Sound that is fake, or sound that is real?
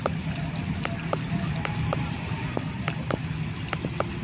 real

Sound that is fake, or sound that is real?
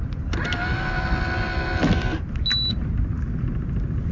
real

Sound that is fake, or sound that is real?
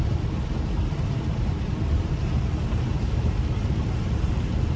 fake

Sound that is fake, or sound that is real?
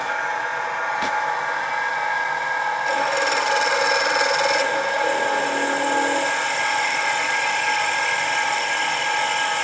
real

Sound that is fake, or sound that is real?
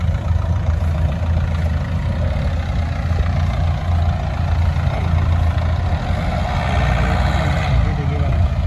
real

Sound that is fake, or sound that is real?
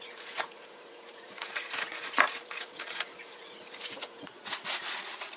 fake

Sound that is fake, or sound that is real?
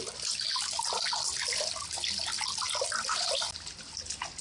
real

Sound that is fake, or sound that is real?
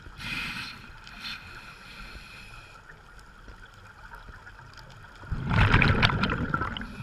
real